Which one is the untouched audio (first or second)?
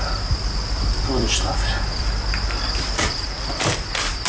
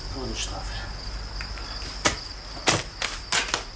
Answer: second